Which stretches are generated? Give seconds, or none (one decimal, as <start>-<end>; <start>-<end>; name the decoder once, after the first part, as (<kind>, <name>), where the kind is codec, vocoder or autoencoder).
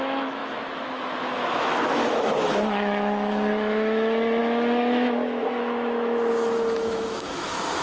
0.0-7.8 (autoencoder, DAC-VAE)